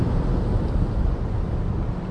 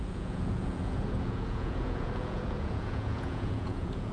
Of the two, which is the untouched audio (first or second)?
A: first